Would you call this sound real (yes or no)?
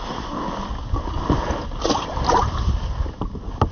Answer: yes